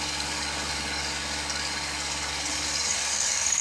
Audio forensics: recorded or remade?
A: remade